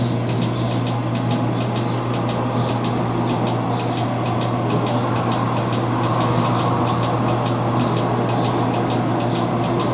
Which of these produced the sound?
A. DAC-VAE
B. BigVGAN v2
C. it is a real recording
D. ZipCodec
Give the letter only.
C